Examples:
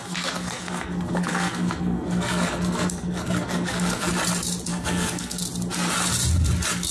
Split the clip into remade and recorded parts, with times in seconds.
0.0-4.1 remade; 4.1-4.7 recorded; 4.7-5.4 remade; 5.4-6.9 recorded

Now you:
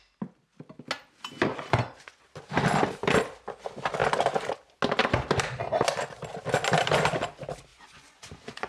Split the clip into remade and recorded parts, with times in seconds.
0.0-1.5 recorded; 1.5-2.2 remade; 2.2-7.7 recorded; 7.7-8.7 remade

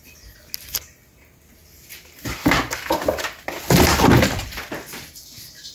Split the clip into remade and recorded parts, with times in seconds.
0.0-5.7 recorded

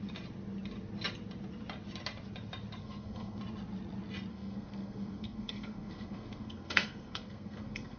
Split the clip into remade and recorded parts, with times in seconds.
0.0-2.8 recorded; 2.8-3.4 remade; 3.4-4.3 recorded; 4.3-8.0 remade

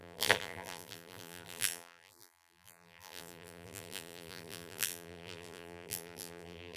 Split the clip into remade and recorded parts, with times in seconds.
0.0-6.8 remade

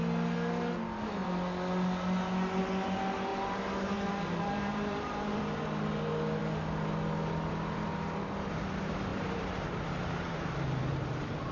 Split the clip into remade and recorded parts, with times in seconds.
0.0-3.3 recorded; 3.3-5.4 remade; 5.4-9.1 recorded; 9.1-11.5 remade

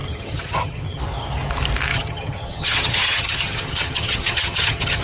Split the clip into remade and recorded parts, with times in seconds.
0.0-1.0 remade; 1.0-1.9 recorded; 1.9-5.0 remade

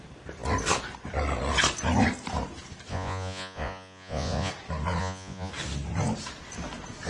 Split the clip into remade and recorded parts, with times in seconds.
0.0-2.9 recorded; 2.9-4.5 remade; 4.5-5.0 recorded; 5.0-5.5 remade; 5.5-7.1 recorded